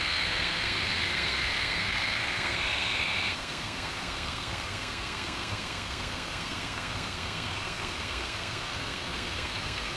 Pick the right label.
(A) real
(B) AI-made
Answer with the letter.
B